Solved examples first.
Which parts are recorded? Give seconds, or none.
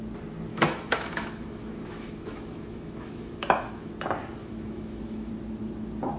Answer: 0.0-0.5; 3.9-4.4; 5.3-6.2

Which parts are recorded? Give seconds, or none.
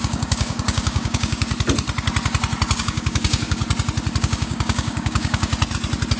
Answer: 1.5-2.8; 3.6-4.2; 5.5-6.2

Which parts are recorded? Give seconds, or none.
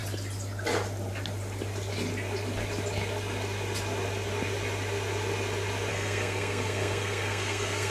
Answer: 0.0-5.9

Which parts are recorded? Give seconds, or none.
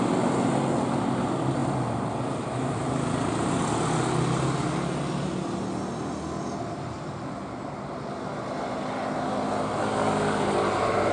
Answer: 0.0-11.1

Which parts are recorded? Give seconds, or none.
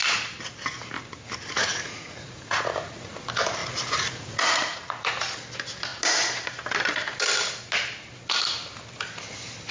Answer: 0.0-1.4; 3.1-3.6; 5.1-9.7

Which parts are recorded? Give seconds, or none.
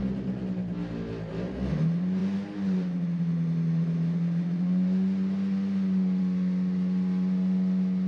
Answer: 0.0-8.1